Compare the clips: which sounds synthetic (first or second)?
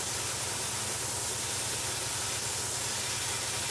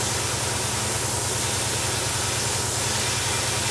first